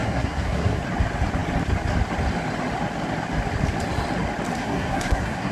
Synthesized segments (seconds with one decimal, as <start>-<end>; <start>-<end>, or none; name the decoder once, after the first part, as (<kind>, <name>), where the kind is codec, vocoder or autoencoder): 0.0-0.8 (codec, SNAC); 4.6-5.5